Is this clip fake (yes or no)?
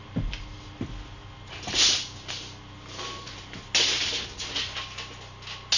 no